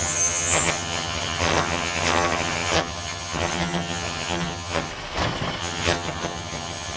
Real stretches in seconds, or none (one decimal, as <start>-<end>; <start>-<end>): 4.9-5.6